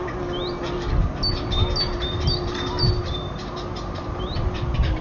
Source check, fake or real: real